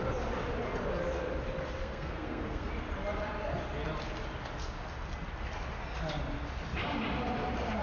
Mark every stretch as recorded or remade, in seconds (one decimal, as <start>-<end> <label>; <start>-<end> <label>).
0.0-1.8 recorded; 1.8-2.7 remade; 2.7-7.8 recorded